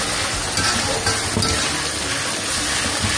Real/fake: real